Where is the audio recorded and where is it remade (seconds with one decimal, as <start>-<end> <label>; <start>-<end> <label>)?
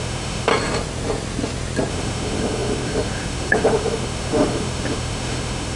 0.0-0.5 remade; 0.5-1.9 recorded; 1.9-5.8 remade